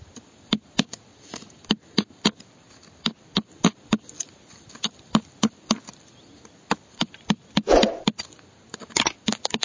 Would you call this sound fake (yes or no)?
no